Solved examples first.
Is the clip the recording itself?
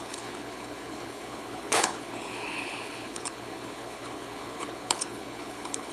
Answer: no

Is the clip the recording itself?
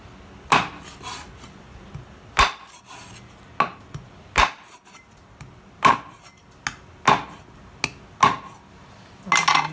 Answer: yes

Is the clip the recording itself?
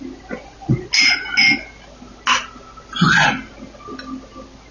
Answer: yes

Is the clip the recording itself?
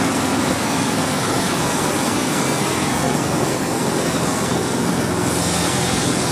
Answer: no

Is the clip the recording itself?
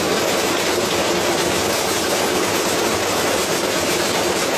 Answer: yes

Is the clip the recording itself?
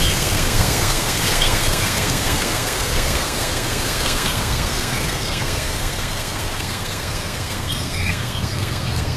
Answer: no